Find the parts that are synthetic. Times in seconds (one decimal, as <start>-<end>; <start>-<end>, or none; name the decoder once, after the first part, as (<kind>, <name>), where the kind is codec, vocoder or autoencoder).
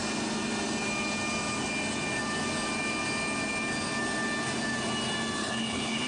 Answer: 5.4-6.1 (codec, HILCodec)